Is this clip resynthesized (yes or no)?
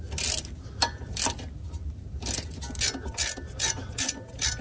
no